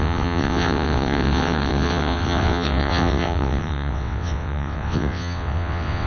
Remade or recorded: remade